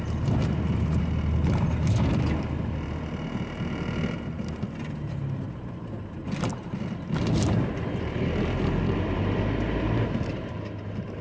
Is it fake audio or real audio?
real